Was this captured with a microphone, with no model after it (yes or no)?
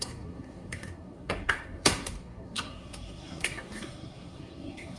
no